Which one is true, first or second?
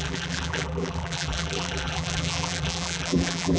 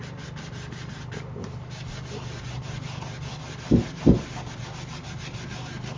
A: second